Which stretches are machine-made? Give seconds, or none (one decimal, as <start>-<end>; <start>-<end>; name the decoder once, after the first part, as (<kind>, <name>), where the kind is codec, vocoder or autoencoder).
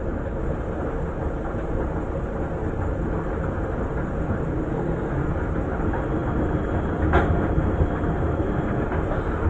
4.7-5.2 (codec, SNAC)